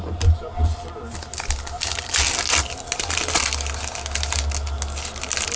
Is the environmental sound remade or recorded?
recorded